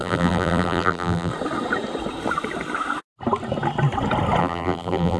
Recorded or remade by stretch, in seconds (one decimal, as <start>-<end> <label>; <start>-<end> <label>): 0.0-1.3 remade; 1.3-4.4 recorded; 4.4-5.2 remade